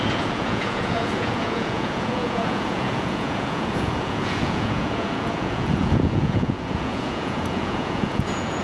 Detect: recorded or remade remade